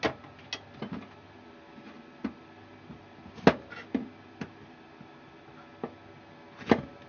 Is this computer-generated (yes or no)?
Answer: no